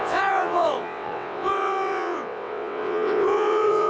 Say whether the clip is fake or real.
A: fake